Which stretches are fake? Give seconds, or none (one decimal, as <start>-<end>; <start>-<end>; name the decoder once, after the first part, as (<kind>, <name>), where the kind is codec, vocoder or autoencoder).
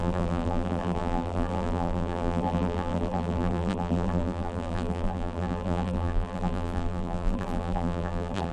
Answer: 0.0-8.5 (vocoder, BigVGAN v2)